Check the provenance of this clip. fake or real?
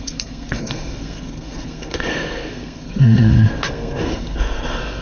fake